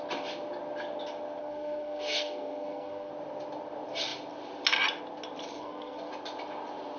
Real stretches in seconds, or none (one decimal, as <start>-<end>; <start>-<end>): 0.0-1.4; 3.1-5.5; 6.1-7.0

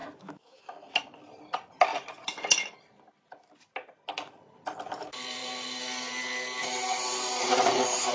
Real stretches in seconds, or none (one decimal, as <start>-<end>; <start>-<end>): 0.6-8.1